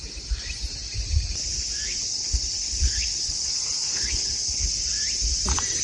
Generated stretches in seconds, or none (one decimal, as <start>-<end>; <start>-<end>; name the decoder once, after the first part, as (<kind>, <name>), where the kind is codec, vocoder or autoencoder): 2.1-4.7 (codec, HILCodec)